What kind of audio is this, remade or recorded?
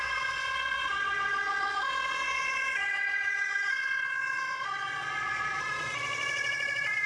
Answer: remade